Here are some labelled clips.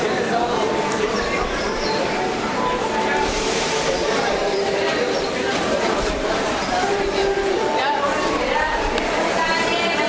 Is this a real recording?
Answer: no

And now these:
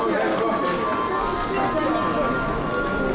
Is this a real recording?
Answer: yes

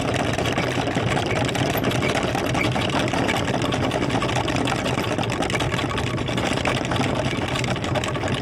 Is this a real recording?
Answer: yes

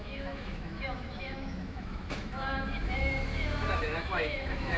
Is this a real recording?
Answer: no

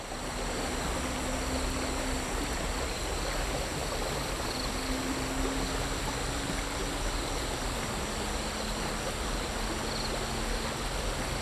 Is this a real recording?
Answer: yes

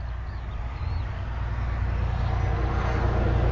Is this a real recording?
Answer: yes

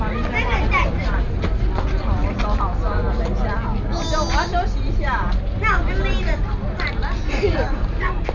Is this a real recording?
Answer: yes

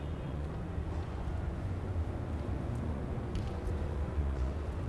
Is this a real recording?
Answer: no